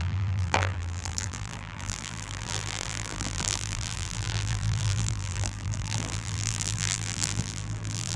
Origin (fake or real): fake